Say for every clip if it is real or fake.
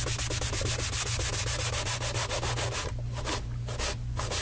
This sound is real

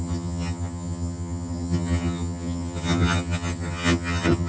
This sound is fake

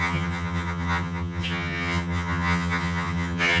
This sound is fake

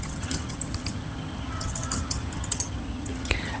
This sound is fake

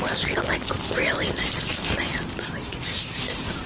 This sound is real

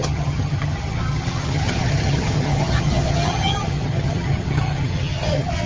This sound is fake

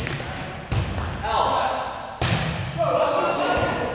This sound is real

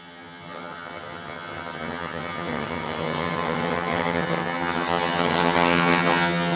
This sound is fake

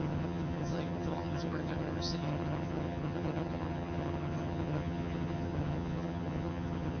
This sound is fake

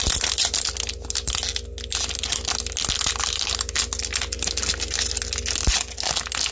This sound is real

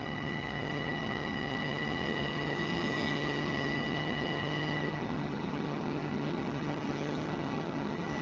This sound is fake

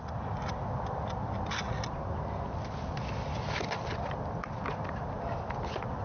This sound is real